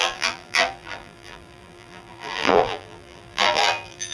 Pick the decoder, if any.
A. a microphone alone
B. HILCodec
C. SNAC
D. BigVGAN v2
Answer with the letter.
D